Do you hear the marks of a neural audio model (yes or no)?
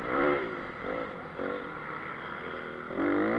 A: no